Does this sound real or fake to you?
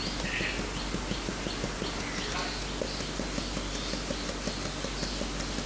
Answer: real